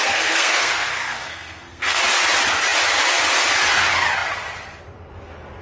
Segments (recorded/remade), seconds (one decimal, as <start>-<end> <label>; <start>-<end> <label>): 0.0-2.0 remade; 2.0-5.6 recorded